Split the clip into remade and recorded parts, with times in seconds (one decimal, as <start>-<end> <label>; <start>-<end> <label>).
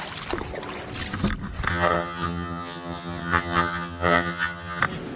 0.0-1.7 recorded; 1.7-4.8 remade; 4.8-5.2 recorded